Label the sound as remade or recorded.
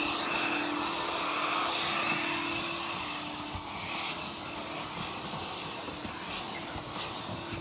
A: recorded